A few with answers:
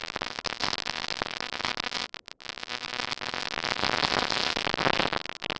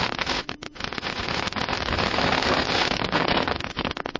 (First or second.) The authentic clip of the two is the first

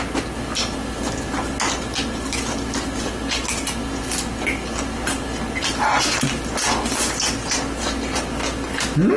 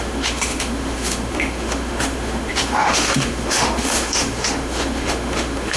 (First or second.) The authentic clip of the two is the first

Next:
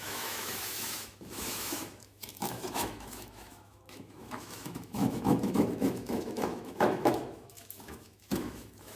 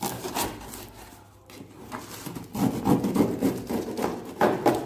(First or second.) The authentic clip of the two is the second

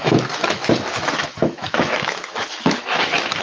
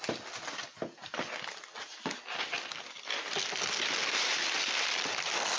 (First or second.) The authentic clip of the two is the second